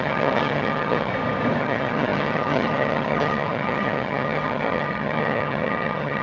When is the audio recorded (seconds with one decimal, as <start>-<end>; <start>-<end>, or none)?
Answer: 1.1-1.6